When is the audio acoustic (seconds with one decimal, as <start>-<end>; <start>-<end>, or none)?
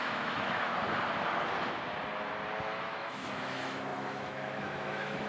0.7-2.8